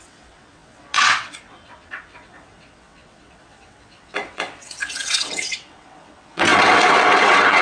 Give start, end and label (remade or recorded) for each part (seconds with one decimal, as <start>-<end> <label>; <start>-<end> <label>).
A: 0.0-7.6 remade